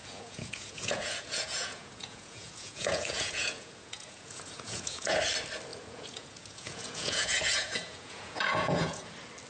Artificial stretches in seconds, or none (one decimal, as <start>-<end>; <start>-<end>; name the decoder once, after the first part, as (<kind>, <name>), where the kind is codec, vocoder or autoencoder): 0.0-5.2 (vocoder, Vocos); 5.7-9.1